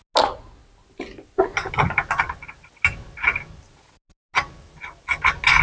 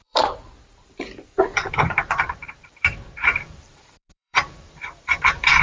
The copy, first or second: second